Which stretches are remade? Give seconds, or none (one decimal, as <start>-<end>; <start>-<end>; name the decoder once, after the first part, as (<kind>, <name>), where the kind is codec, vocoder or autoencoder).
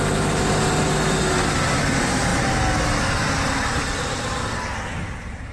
none